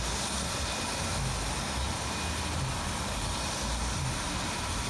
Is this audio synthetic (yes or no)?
no